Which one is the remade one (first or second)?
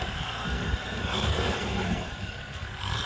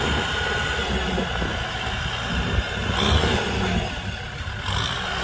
first